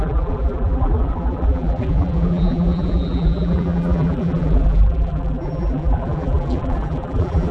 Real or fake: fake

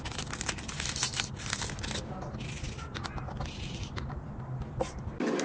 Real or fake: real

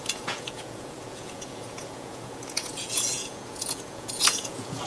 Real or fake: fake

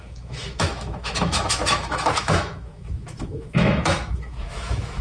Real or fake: fake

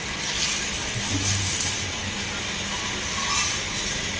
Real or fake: real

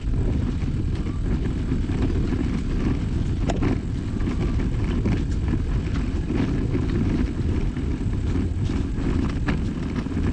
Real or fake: real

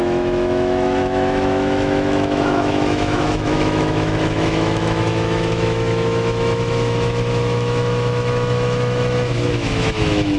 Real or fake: fake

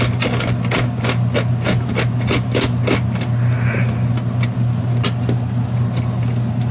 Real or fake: real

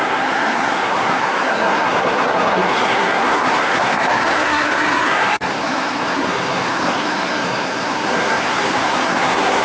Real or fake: fake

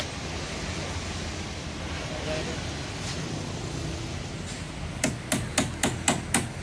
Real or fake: real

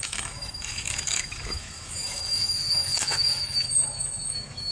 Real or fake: fake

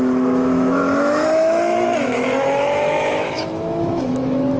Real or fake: fake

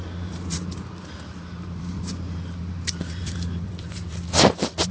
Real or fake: fake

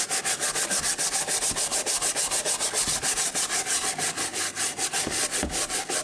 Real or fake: real